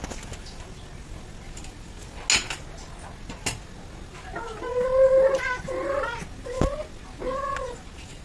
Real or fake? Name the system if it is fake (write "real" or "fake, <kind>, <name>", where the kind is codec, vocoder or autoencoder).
real